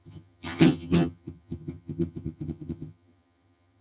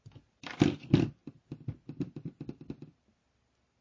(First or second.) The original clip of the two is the second